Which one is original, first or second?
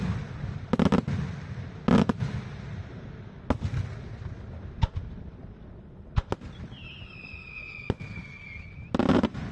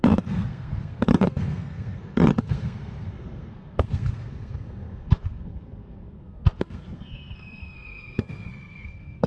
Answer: first